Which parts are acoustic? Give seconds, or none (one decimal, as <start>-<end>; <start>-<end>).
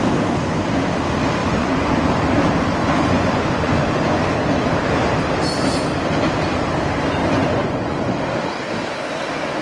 0.0-1.4; 1.9-2.8; 4.2-7.2; 8.2-9.6